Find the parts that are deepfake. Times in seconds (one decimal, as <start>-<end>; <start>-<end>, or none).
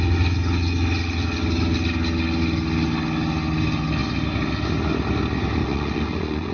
5.6-6.5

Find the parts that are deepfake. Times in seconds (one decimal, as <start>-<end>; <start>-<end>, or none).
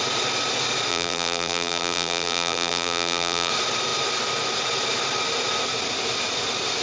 0.9-3.5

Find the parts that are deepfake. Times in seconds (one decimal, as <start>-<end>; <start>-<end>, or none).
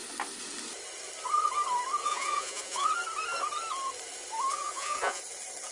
2.0-2.9; 4.5-5.2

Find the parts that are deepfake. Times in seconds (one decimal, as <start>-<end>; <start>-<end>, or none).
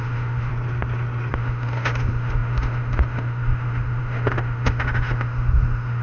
0.0-0.5; 1.3-6.0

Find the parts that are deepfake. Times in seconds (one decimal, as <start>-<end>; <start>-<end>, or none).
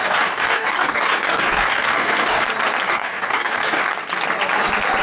0.0-2.4; 2.9-3.8